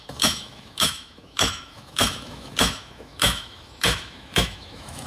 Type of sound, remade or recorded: remade